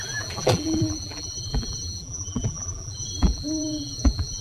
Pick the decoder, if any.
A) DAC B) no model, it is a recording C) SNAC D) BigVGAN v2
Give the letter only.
D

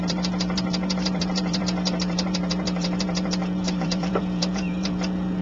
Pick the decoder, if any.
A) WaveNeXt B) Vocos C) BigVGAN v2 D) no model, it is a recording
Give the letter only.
C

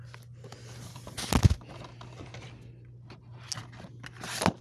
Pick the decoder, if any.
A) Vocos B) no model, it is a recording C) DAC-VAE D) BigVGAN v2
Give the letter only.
B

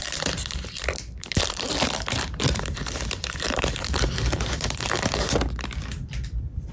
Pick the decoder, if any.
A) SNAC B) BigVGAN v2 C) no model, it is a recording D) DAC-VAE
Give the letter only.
B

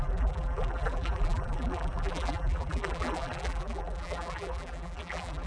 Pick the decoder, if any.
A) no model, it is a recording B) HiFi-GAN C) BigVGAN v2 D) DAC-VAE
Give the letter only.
C